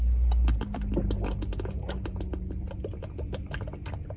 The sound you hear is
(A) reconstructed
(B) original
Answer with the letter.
B